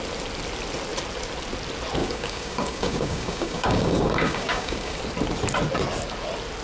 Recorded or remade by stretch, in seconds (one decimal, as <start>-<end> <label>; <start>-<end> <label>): 0.0-2.0 recorded; 2.0-5.0 remade; 5.0-6.6 recorded